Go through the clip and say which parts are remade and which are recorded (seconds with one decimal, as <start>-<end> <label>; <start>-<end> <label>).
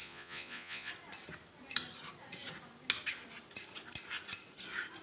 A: 0.0-0.9 remade; 0.9-5.0 recorded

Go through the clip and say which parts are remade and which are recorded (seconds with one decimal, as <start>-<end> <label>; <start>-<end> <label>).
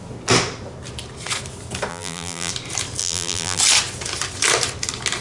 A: 0.0-1.9 recorded; 1.9-2.5 remade; 2.5-3.0 recorded; 3.0-3.6 remade; 3.6-5.2 recorded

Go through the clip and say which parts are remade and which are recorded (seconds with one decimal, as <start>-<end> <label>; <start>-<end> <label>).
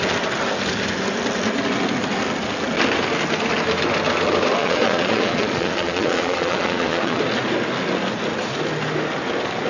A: 0.0-4.6 recorded; 4.6-7.2 remade; 7.2-9.7 recorded